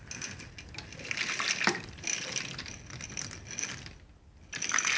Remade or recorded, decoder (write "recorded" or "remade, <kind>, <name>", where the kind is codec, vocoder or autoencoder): recorded